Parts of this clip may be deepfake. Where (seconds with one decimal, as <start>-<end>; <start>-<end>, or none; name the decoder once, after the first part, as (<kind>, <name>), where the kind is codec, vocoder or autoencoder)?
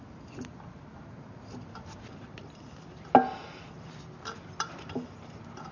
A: none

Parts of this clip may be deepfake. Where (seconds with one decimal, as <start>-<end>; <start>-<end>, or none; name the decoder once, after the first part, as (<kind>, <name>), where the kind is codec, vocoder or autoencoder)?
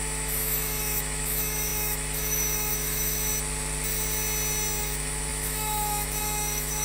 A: 0.0-3.3 (autoencoder, DAC-VAE); 4.8-6.8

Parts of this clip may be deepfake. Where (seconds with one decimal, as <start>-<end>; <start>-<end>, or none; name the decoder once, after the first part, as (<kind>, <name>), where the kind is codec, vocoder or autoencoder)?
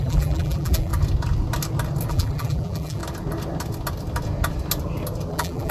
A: 0.0-0.9 (vocoder, BigVGAN v2); 2.1-3.0; 5.3-5.7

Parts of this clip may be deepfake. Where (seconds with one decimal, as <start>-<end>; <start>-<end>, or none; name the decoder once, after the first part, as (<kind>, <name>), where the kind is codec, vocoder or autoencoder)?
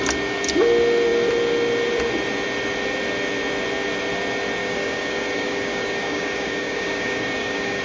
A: 4.6-7.8 (codec, DAC)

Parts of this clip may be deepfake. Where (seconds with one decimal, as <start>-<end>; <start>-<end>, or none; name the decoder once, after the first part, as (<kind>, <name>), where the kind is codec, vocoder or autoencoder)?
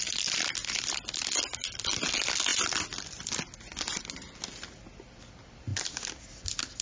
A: none